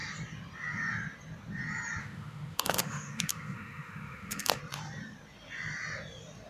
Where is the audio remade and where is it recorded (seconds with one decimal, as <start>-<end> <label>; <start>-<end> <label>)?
0.0-2.0 recorded; 2.0-4.6 remade; 4.6-6.5 recorded